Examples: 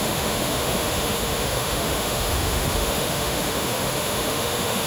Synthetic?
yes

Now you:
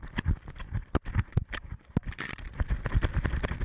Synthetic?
no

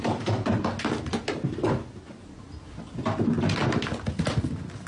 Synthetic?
no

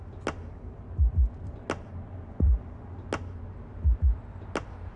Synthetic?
no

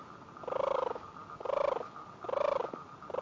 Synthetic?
no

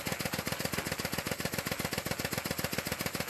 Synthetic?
no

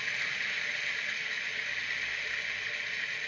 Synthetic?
no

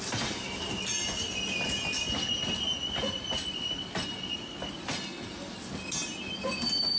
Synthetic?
no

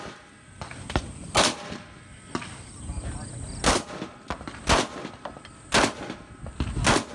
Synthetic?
no